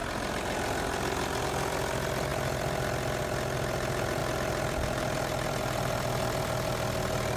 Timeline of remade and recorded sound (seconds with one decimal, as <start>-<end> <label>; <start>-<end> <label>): 0.0-7.4 recorded